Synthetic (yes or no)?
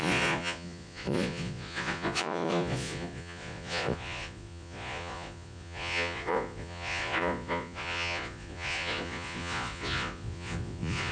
yes